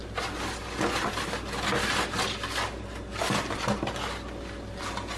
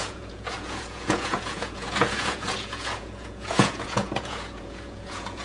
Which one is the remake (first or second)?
second